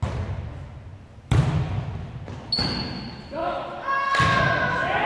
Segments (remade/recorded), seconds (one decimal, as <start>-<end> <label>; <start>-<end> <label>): 0.0-5.1 recorded